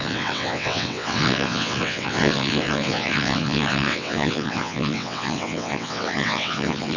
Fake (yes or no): yes